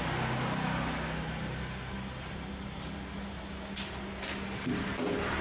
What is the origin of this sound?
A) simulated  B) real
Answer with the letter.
B